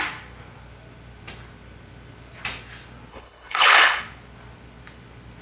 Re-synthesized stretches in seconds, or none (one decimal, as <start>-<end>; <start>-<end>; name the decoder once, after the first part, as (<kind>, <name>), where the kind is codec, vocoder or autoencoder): 3.1-4.0 (codec, HILCodec)